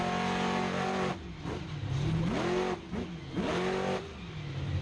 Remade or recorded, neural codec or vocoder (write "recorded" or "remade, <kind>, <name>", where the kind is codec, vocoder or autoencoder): recorded